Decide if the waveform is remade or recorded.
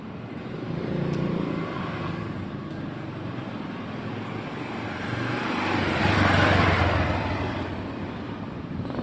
recorded